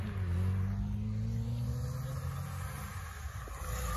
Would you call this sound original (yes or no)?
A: yes